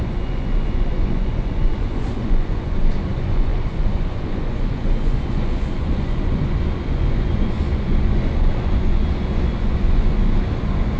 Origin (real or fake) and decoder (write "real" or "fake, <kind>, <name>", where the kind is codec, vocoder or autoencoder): fake, vocoder, Vocos